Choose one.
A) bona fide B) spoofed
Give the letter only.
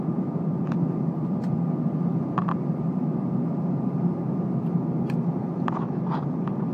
A